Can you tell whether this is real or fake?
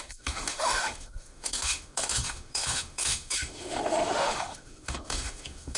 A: fake